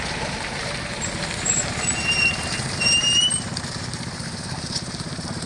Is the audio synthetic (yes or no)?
yes